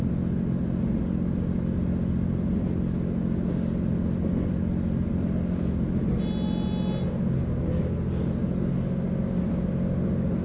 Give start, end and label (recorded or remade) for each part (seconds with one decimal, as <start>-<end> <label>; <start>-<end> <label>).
0.0-10.4 recorded